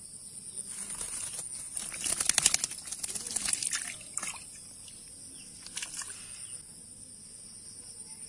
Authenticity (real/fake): real